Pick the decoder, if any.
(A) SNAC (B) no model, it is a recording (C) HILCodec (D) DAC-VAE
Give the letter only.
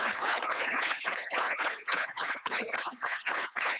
C